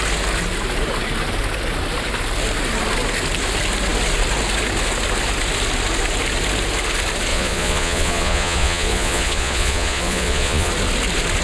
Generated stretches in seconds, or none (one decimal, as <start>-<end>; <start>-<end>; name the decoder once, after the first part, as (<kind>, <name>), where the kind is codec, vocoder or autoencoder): 7.3-10.7 (vocoder, Vocos)